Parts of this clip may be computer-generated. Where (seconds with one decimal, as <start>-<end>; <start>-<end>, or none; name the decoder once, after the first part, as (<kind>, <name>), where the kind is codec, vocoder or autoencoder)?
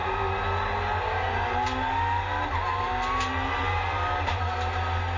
none